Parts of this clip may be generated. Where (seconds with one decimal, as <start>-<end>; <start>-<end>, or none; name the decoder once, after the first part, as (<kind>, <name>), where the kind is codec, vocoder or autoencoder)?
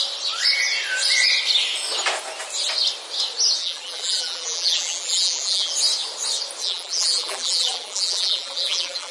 3.6-5.7 (vocoder, BigVGAN v2); 6.6-9.1